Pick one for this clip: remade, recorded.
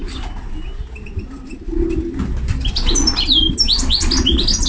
recorded